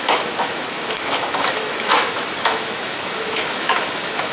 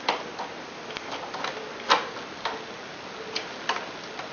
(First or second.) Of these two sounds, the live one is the second